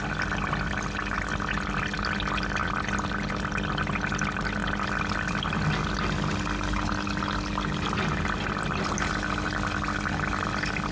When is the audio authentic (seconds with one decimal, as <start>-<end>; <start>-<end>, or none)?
0.0-10.9